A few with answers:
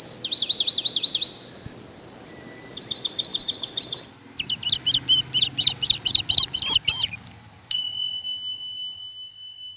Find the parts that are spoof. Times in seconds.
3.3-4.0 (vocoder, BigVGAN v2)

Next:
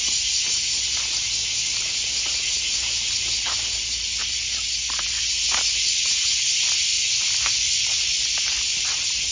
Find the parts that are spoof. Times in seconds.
1.4-5.3 (vocoder, BigVGAN v2)

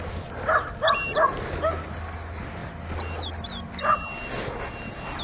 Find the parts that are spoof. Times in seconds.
2.6-5.2 (vocoder, BigVGAN v2)

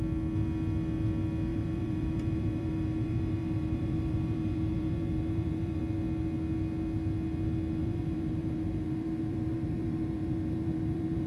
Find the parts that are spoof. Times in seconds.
1.5-5.8 (vocoder, BigVGAN v2); 7.8-11.3